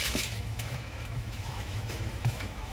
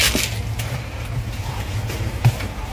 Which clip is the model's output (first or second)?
first